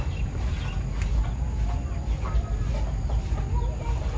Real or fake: real